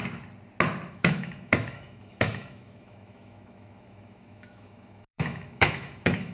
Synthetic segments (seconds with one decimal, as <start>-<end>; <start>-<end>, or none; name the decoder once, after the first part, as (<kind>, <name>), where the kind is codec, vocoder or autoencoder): 0.9-6.3 (autoencoder, DAC-VAE)